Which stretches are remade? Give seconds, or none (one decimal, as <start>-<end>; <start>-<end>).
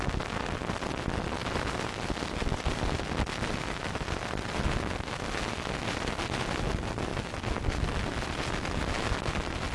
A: none